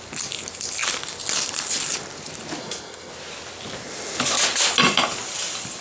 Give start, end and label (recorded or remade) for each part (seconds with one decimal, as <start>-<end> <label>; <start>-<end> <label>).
0.0-2.6 recorded; 2.6-3.1 remade; 3.1-5.8 recorded